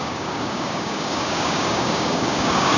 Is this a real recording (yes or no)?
no